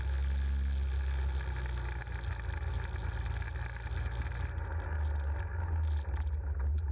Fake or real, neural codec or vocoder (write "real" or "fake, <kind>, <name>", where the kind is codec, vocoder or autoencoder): real